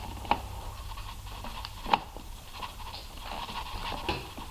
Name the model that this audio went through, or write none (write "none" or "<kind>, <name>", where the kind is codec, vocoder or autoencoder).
none